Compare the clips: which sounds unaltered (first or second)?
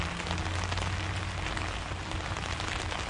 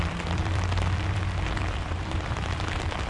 first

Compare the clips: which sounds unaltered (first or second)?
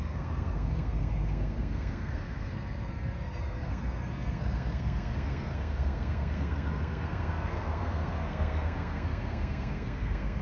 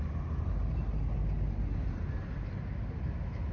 second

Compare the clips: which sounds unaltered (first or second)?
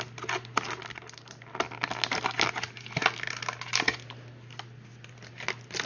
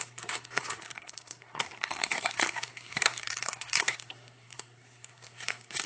first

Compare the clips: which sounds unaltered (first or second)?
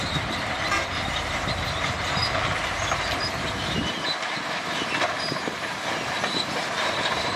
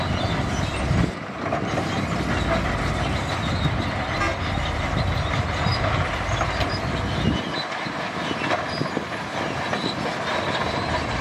second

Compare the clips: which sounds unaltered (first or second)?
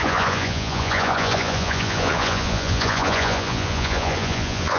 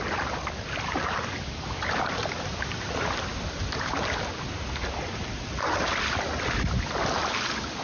second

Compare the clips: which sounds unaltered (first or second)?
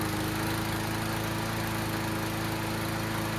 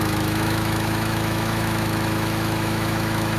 first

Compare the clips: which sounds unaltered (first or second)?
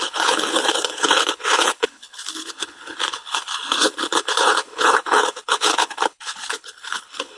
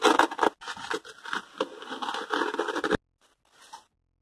second